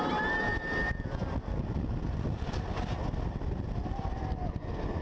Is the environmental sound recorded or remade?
recorded